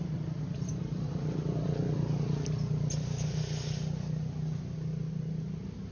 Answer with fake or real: real